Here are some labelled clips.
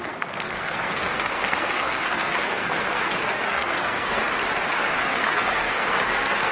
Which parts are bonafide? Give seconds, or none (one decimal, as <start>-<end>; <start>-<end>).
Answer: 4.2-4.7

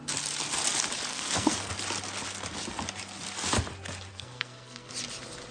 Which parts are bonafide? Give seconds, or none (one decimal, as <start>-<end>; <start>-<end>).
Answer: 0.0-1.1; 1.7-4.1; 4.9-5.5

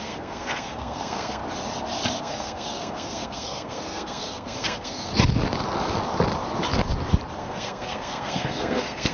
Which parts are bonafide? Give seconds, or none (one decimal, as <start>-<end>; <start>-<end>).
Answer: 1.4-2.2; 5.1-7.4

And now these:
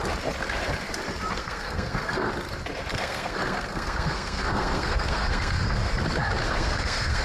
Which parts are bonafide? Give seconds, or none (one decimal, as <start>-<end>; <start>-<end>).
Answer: 0.0-1.4; 2.3-2.9; 5.9-6.4

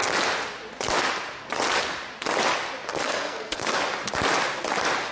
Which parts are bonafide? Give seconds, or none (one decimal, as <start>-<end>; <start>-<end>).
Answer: 0.0-2.9; 3.8-5.1